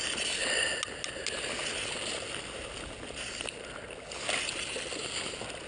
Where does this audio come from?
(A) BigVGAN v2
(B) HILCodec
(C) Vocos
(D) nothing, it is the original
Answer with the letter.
D